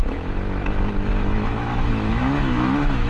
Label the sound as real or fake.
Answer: fake